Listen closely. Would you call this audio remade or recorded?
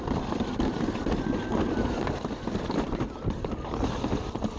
recorded